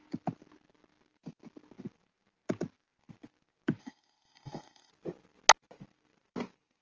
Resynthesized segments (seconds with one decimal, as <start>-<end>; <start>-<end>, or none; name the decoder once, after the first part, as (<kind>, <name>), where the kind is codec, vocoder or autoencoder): 3.8-4.9 (codec, SNAC)